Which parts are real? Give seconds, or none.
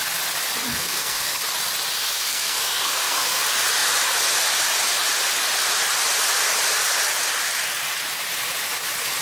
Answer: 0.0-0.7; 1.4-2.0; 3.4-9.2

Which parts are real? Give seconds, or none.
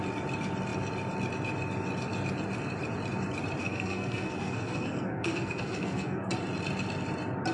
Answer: 0.0-3.6; 6.3-7.5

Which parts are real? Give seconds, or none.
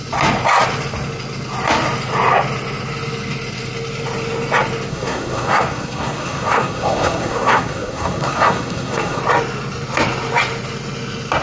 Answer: 0.0-4.9; 9.2-11.4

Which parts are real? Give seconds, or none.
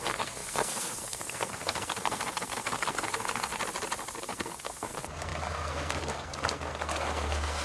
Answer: 3.5-4.2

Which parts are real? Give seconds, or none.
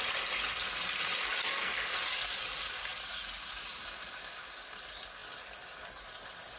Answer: 0.0-1.5; 2.0-6.6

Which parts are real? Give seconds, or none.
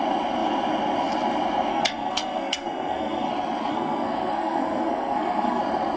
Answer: 0.0-1.7; 3.3-3.7; 5.6-6.0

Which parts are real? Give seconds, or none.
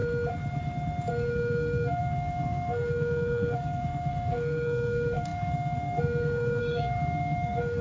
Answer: 0.0-1.1